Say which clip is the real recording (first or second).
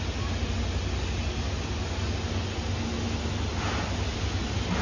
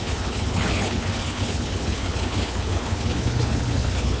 first